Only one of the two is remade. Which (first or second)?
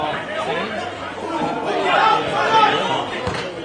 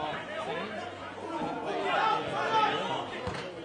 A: first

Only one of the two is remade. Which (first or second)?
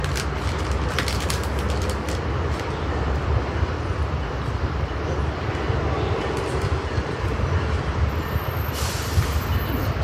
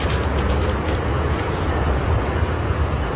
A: second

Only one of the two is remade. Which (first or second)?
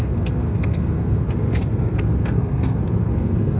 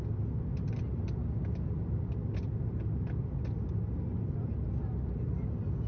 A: first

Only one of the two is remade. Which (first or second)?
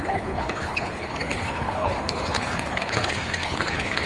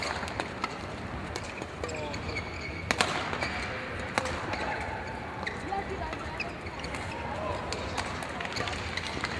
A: first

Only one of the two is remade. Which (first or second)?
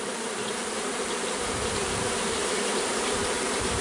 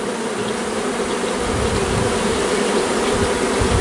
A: first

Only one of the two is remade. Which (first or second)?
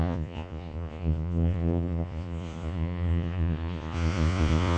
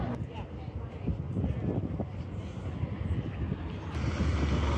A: first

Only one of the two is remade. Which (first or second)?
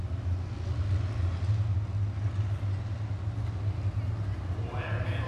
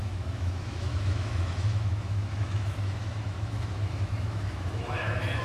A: second